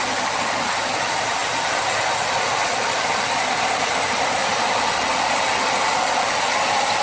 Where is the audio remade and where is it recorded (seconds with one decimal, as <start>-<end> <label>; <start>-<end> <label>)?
0.0-7.0 recorded